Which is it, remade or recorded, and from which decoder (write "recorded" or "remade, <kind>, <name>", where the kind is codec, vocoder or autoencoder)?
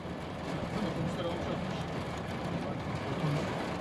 recorded